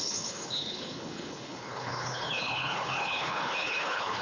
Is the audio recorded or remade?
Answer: remade